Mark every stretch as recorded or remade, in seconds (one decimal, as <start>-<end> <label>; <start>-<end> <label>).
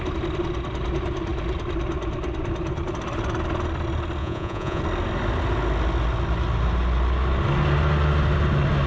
0.0-4.2 recorded; 4.2-4.8 remade; 4.8-8.9 recorded